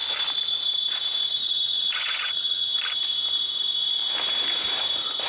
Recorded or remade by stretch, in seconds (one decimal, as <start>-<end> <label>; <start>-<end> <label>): 0.0-1.4 recorded; 1.4-2.7 remade; 2.7-5.3 recorded